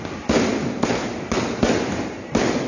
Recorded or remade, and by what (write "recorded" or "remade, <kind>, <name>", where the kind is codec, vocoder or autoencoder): recorded